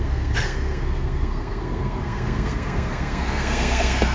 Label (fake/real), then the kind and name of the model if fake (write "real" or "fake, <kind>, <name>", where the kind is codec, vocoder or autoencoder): fake, codec, SNAC